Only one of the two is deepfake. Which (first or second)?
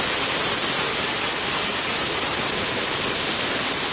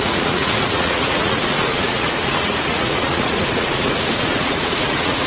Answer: second